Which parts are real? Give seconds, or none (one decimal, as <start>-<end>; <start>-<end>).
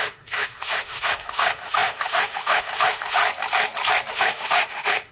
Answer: 3.2-4.1